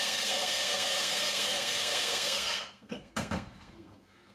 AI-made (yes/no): yes